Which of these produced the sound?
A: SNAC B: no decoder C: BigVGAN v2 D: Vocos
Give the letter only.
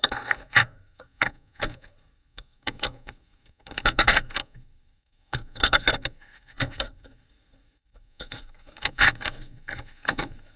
A